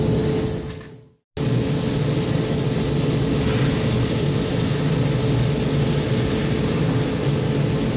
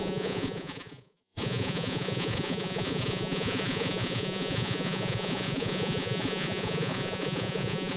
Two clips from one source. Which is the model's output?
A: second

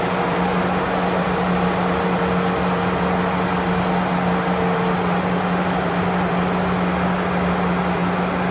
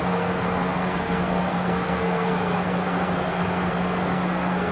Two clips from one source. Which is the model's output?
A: second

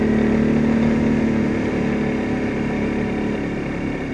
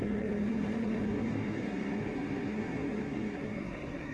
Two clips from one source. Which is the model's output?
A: second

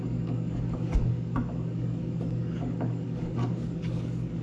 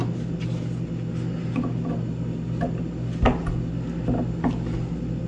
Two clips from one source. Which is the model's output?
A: first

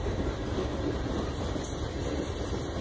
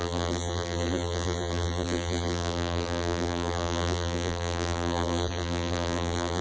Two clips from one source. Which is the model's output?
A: second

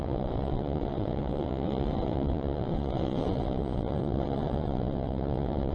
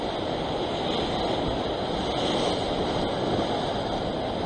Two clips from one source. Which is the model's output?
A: first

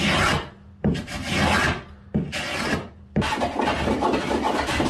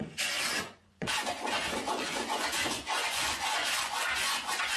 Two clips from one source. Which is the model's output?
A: second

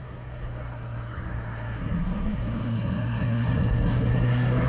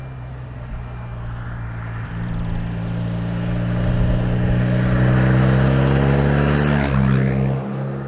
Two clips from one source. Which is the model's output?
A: first